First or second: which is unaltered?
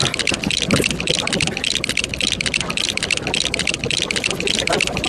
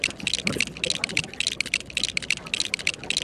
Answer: second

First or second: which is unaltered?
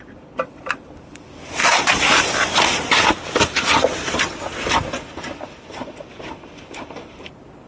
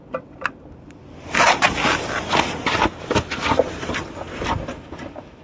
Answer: second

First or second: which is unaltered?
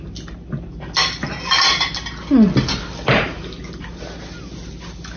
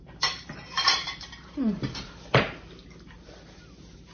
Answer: first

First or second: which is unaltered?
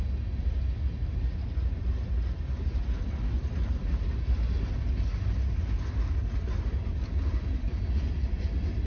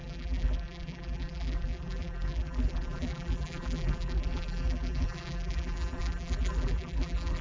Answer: first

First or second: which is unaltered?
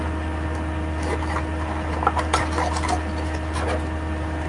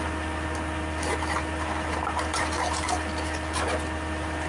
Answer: first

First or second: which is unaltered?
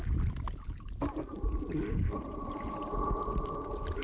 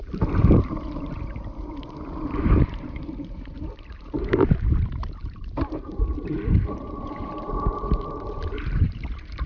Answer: first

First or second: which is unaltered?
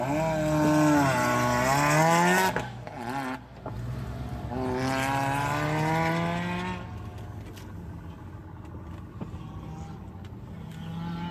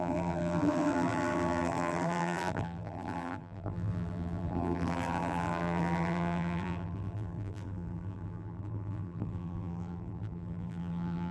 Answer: first